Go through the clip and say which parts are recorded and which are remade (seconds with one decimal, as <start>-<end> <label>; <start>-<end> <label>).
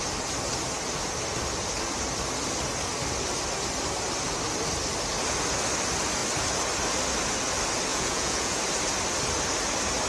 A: 0.0-7.9 recorded; 7.9-8.6 remade; 8.6-10.1 recorded